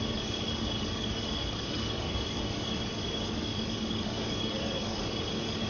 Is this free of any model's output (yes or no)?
no